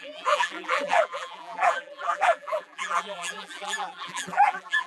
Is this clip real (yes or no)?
no